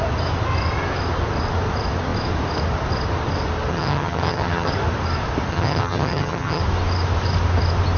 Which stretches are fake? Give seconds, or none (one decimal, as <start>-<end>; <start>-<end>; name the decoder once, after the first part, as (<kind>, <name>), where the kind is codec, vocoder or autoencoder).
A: 3.7-4.7 (vocoder, HiFi-GAN); 5.5-6.6